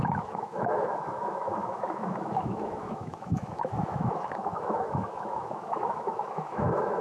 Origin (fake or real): fake